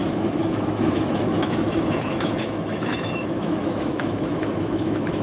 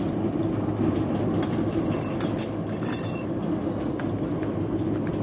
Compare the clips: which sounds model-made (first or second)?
first